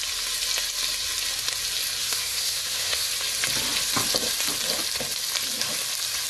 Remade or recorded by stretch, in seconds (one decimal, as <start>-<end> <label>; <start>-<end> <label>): 0.0-2.0 recorded; 2.0-3.1 remade; 3.1-6.3 recorded

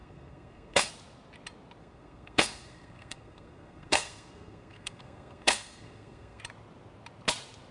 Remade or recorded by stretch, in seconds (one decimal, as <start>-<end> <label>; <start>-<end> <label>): 0.0-0.9 remade; 0.9-1.8 recorded; 1.8-6.4 remade; 6.4-7.7 recorded

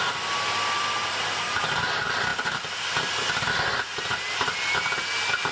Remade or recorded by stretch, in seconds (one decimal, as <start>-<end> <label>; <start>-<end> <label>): 0.0-5.5 recorded

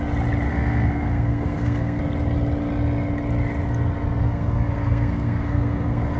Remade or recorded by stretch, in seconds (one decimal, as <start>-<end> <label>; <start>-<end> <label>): 0.0-0.5 recorded; 0.5-2.0 remade; 2.0-4.2 recorded; 4.2-6.2 remade

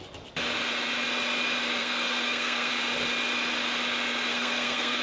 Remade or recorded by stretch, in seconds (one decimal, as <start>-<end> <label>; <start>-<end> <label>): 0.0-1.8 recorded; 1.8-2.7 remade; 2.7-4.3 recorded; 4.3-5.0 remade